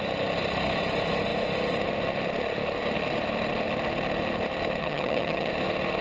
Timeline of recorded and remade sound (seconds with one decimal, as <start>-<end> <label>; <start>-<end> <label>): 0.0-4.8 recorded; 4.8-5.5 remade; 5.5-6.0 recorded